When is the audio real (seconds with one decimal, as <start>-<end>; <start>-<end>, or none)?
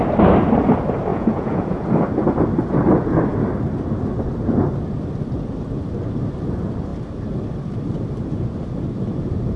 0.0-1.1; 1.9-9.6